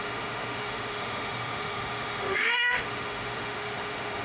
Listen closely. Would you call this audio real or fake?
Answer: fake